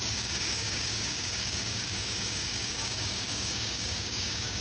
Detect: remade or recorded remade